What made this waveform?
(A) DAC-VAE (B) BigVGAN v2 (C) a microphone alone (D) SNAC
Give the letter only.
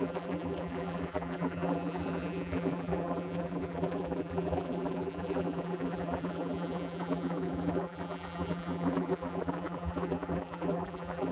B